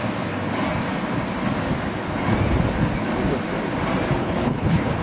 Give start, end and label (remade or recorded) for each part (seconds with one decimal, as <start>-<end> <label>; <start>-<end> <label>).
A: 0.0-4.2 recorded; 4.2-5.0 remade